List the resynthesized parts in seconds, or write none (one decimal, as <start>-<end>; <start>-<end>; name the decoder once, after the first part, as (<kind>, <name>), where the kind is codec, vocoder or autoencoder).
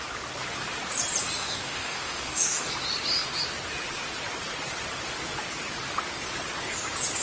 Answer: 1.4-2.7 (codec, DAC)